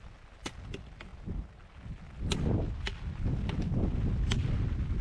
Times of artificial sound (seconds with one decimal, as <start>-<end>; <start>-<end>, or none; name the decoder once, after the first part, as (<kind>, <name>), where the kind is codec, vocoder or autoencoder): none